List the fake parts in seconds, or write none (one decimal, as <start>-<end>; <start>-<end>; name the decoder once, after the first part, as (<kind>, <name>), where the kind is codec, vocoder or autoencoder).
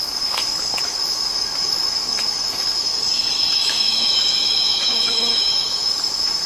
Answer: 0.0-2.9 (autoencoder, DAC-VAE); 3.5-6.5